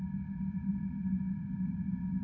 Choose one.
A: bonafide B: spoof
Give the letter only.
A